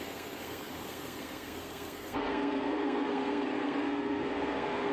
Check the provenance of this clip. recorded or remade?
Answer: remade